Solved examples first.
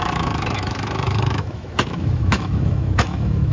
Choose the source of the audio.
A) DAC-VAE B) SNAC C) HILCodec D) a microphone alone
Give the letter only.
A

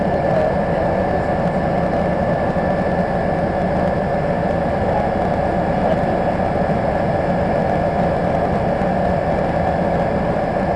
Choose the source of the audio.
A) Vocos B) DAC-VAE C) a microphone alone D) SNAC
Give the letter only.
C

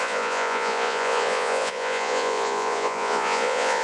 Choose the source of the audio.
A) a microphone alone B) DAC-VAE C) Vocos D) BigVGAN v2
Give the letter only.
C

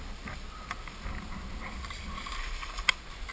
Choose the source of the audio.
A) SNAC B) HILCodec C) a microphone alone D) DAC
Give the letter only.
C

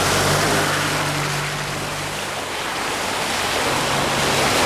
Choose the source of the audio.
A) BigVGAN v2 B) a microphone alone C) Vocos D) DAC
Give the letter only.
B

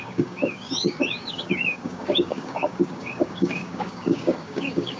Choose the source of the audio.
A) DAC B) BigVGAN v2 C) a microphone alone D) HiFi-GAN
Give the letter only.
A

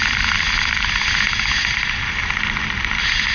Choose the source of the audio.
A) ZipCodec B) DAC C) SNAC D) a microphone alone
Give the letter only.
D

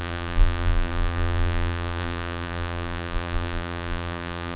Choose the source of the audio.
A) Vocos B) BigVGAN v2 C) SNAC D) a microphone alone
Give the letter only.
B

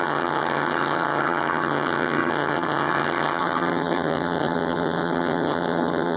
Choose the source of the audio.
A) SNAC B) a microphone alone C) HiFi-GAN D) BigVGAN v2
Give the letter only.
C